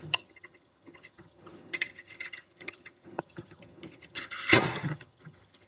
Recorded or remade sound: remade